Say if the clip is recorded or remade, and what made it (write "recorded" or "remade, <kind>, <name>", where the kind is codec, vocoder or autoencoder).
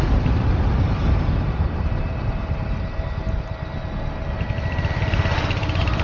remade, vocoder, BigVGAN v2